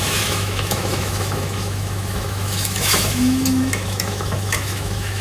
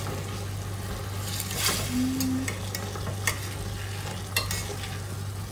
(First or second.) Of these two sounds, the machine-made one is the first